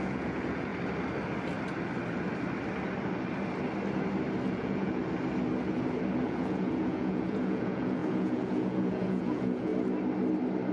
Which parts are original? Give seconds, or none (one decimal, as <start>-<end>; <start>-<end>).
0.7-4.5; 5.0-6.2; 9.7-10.7